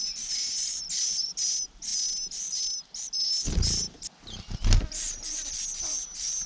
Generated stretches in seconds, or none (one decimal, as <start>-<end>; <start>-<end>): none